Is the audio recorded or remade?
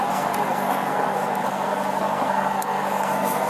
remade